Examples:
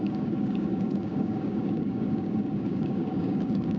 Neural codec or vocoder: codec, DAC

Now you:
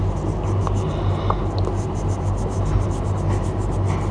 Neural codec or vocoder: none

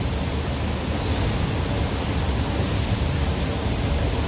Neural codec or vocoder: none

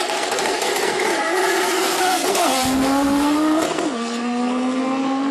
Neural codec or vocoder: codec, SNAC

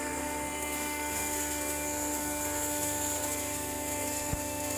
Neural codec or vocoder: codec, SNAC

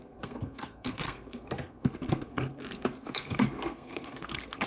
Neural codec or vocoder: codec, SNAC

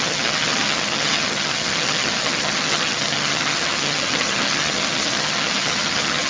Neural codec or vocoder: vocoder, HiFi-GAN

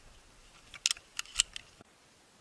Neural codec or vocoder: none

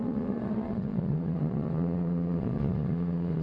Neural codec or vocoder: vocoder, Vocos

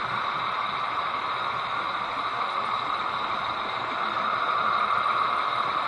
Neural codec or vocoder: vocoder, BigVGAN v2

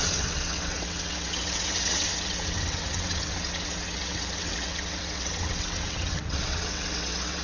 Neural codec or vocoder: vocoder, WaveNeXt